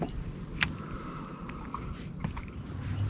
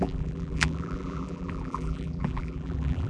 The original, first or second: first